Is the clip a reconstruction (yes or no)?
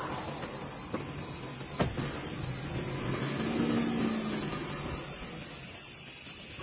no